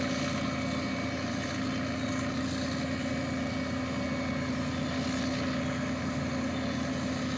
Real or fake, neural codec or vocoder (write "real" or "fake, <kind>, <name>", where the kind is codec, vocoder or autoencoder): real